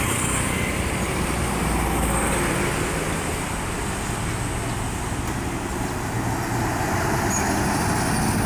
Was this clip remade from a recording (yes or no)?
no